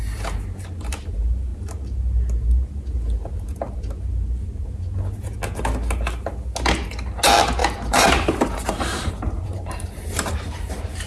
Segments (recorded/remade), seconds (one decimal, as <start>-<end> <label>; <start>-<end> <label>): 0.0-7.6 recorded; 7.6-11.1 remade